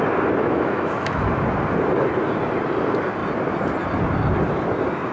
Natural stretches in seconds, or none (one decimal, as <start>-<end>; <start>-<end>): 0.0-0.4; 1.3-5.1